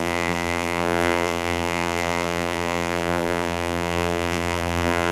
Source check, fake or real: fake